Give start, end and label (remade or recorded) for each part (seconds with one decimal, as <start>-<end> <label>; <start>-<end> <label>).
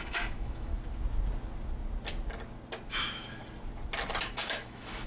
0.0-0.7 remade; 0.7-2.9 recorded; 2.9-3.4 remade; 3.4-4.3 recorded; 4.3-5.1 remade